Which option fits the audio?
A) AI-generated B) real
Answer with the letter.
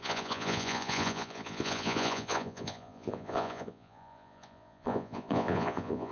A